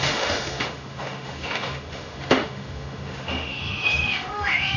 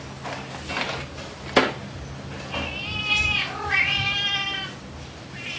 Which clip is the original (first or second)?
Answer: second